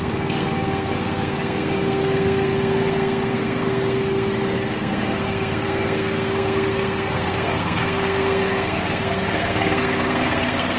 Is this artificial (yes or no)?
yes